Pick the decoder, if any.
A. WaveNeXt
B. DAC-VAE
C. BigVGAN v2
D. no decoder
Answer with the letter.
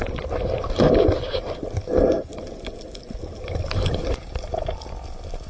C